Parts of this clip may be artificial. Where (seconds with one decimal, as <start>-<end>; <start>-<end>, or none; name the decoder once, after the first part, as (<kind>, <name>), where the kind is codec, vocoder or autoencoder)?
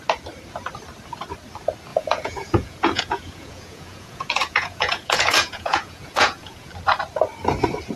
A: 1.9-6.7 (vocoder, Vocos)